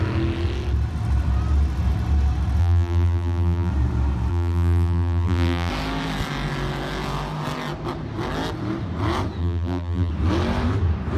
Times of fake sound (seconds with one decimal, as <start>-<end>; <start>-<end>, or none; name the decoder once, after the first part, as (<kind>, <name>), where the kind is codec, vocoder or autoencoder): 2.6-3.7 (vocoder, BigVGAN v2); 4.3-5.7; 9.4-10.1